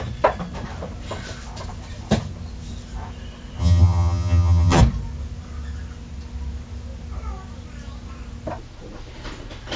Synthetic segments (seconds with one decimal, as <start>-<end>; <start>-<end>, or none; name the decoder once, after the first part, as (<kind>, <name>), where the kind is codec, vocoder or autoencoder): 3.6-4.8 (vocoder, HiFi-GAN)